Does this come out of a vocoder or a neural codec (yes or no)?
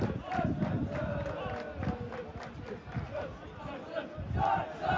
no